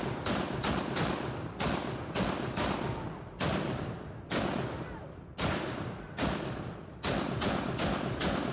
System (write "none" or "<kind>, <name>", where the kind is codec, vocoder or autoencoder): none